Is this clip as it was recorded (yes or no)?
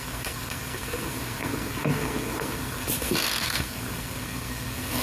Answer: no